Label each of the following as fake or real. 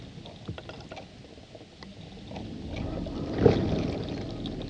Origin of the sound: real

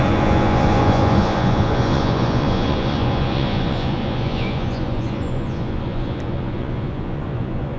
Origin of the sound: fake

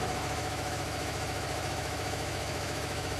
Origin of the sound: fake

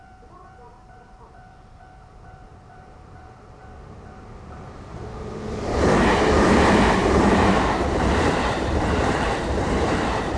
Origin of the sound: fake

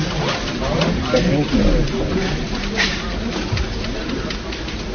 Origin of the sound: real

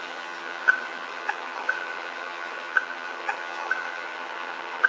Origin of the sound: fake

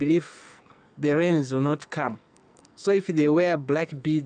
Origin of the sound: fake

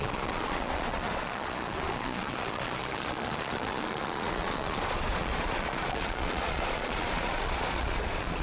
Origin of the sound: fake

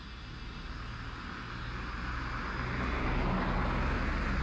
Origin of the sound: real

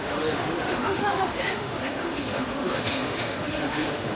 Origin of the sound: fake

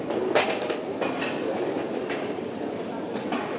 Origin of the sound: real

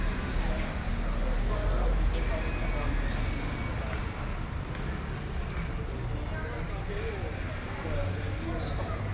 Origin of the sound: real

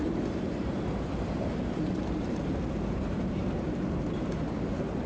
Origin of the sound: fake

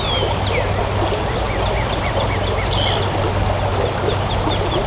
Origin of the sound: real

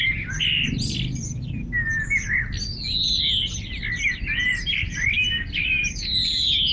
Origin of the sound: real